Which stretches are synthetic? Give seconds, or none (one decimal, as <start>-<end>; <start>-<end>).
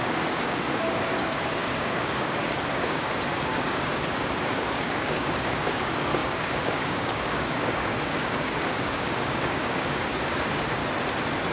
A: 0.0-10.8